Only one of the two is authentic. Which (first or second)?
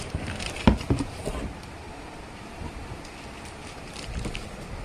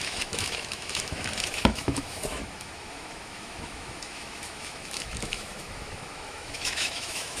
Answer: first